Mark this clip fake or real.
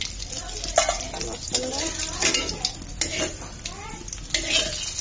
real